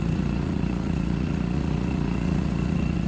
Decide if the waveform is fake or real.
fake